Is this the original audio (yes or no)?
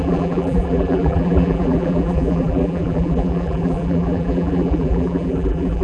no